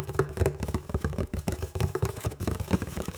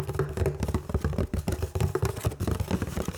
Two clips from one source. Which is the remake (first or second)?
first